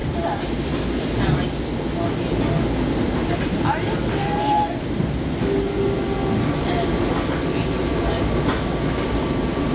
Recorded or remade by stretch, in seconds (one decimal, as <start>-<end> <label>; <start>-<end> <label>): 0.0-4.1 recorded; 4.1-4.8 remade; 4.8-9.7 recorded